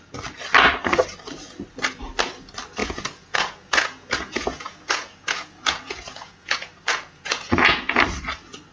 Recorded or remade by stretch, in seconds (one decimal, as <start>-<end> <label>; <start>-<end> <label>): 0.0-2.8 recorded; 2.8-8.0 remade; 8.0-8.7 recorded